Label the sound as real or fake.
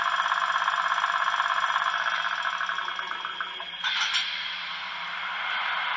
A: real